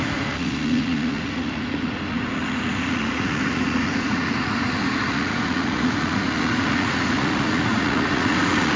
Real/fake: fake